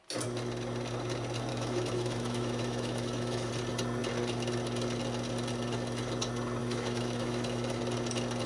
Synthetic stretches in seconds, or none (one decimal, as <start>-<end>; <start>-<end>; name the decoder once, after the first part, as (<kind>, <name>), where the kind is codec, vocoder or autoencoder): 1.5-3.5 (autoencoder, DAC-VAE); 6.6-7.8